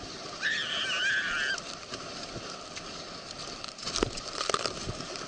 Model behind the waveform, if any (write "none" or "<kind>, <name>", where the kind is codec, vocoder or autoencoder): none